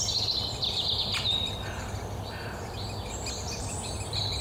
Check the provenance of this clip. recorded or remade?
recorded